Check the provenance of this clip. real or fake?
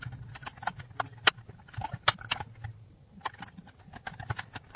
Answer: real